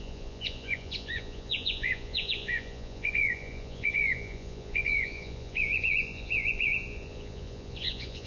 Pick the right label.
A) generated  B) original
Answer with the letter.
A